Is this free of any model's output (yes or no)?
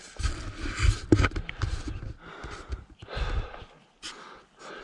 yes